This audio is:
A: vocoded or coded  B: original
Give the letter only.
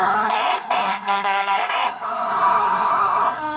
A